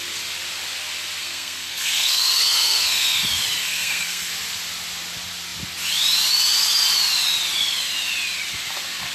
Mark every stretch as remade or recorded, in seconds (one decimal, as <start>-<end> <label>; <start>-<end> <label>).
0.0-1.2 recorded; 1.2-3.2 remade; 3.2-3.6 recorded; 3.6-4.3 remade; 4.3-9.1 recorded